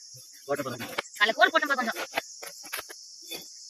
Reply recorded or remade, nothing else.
recorded